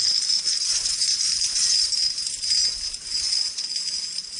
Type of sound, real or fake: real